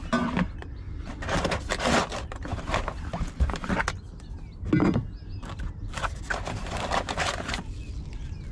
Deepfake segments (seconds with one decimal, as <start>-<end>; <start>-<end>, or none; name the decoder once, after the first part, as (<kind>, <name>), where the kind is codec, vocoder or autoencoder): none